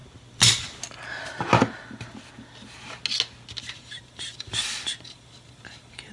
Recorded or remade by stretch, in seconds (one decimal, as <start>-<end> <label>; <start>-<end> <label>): 0.0-3.7 recorded; 3.7-6.1 remade